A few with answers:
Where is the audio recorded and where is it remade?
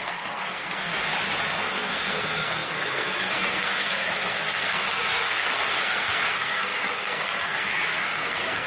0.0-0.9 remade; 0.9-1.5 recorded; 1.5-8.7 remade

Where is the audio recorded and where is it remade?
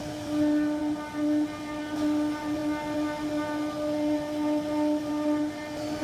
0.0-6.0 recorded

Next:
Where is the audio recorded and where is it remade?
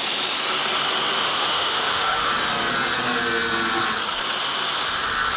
0.0-1.2 recorded; 1.2-2.3 remade; 2.3-5.4 recorded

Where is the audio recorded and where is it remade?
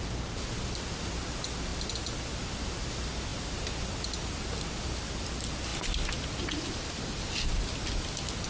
0.0-8.5 recorded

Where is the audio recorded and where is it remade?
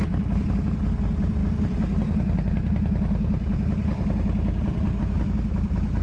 0.0-6.0 recorded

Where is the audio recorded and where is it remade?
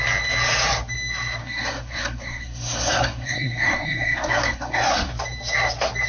0.0-1.4 recorded; 1.4-5.1 remade; 5.1-6.1 recorded